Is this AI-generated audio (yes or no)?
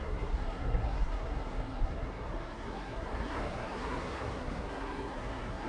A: yes